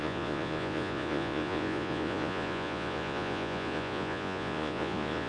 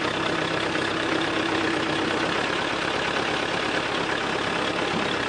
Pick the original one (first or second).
second